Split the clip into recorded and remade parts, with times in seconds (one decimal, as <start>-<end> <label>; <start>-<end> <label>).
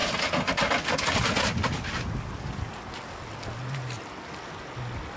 0.0-5.2 recorded